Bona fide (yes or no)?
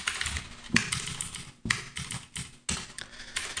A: yes